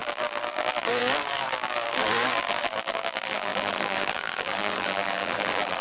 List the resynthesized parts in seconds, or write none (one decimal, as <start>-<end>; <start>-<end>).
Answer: 0.0-5.8